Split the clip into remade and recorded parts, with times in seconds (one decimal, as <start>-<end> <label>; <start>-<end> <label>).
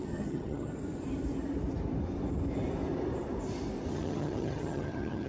0.0-0.7 remade; 0.7-3.9 recorded; 3.9-5.3 remade